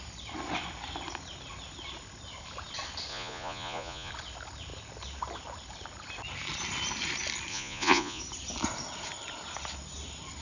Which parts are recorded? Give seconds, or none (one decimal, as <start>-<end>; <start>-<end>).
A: 0.0-3.1; 4.1-7.5; 8.2-10.4